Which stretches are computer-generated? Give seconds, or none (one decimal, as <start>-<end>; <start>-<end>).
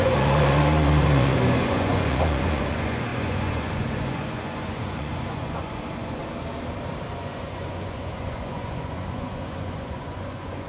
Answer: 0.0-6.2; 7.1-10.7